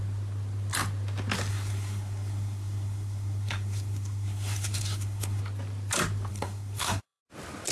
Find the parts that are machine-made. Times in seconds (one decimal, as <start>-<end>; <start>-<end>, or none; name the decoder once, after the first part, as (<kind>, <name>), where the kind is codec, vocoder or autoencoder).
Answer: 1.5-5.4 (codec, SNAC); 6.3-7.2